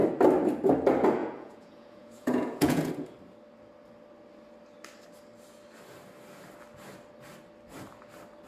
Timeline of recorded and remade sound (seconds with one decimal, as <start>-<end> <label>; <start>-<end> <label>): 0.0-1.2 recorded; 1.2-2.9 remade; 2.9-8.5 recorded